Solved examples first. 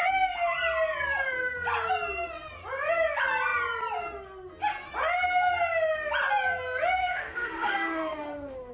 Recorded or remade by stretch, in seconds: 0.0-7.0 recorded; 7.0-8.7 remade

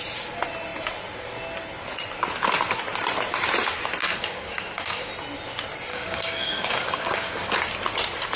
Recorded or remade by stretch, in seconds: 0.0-4.0 recorded; 4.0-5.1 remade; 5.1-5.9 recorded; 5.9-7.6 remade; 7.6-8.4 recorded

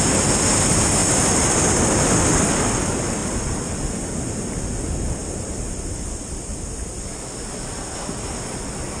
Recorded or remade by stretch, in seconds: 0.0-1.0 recorded; 1.0-1.9 remade; 1.9-3.2 recorded; 3.2-4.2 remade; 4.2-5.2 recorded; 5.2-6.4 remade; 6.4-9.0 recorded

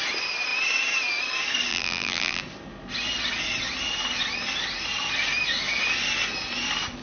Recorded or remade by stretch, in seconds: 0.0-1.7 recorded; 1.7-2.4 remade; 2.4-7.0 recorded

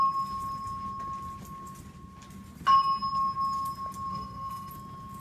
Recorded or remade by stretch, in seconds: 0.0-4.1 recorded; 4.1-4.7 remade; 4.7-5.2 recorded

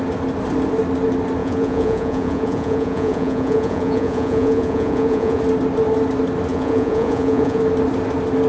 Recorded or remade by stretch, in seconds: 0.0-1.4 recorded; 1.4-5.4 remade; 5.4-6.5 recorded; 6.5-7.6 remade; 7.6-8.5 recorded